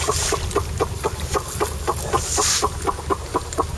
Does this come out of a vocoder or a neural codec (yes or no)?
no